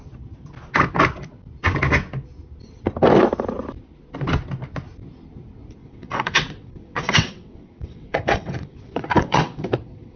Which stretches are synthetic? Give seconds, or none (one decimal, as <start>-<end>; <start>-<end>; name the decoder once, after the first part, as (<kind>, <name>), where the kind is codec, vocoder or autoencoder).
5.8-10.2 (vocoder, WaveNeXt)